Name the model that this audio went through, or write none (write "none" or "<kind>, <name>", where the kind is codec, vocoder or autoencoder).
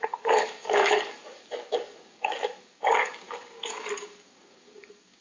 codec, DAC